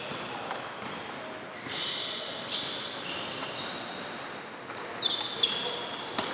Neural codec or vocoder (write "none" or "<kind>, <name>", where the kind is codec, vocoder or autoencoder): none